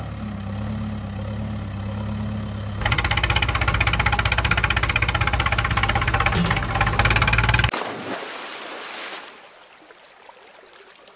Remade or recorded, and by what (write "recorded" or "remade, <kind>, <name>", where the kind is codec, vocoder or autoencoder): recorded